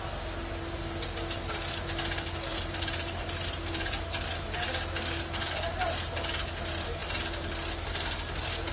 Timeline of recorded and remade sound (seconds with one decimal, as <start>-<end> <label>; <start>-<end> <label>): 0.0-2.5 recorded; 2.5-4.0 remade; 4.0-8.7 recorded